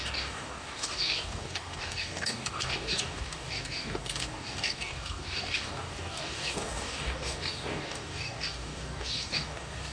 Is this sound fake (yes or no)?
yes